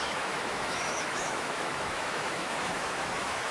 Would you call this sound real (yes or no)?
no